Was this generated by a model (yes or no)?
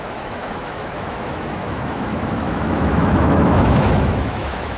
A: yes